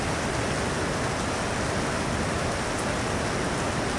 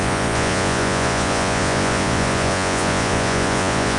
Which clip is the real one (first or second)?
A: first